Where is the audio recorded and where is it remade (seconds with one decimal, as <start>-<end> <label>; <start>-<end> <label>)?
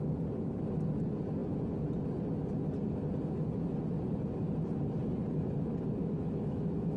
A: 0.0-6.0 recorded; 6.0-7.0 remade